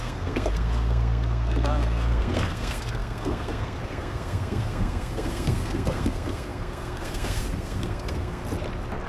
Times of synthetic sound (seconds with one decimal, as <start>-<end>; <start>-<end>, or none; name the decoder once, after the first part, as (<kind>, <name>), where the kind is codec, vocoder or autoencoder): 0.0-8.4 (codec, SNAC)